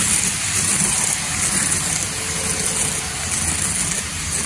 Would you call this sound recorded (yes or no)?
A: yes